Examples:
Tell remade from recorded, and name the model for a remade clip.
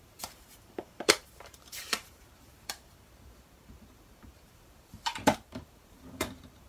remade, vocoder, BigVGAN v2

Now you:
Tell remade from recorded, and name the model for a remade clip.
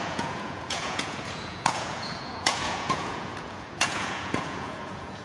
remade, vocoder, Vocos